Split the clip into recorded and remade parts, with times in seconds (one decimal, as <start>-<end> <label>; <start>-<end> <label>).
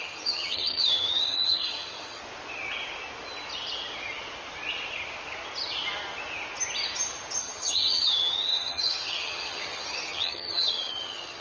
0.0-2.2 remade; 2.2-7.4 recorded; 7.4-11.4 remade